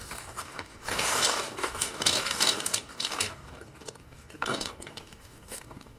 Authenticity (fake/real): fake